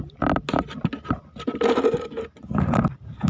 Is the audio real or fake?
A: real